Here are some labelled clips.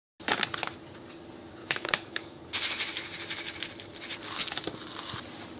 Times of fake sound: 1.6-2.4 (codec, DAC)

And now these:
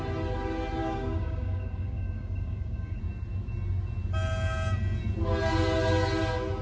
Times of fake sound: 0.8-3.0 (codec, DAC)

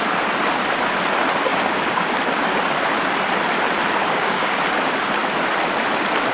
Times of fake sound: 1.5-2.1 (codec, DAC); 4.0-4.6